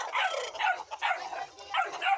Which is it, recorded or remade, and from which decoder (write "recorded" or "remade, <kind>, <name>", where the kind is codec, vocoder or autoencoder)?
recorded